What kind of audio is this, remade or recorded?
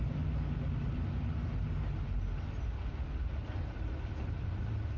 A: recorded